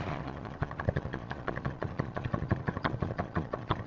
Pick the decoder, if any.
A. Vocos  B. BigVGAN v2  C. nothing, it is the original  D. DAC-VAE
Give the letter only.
A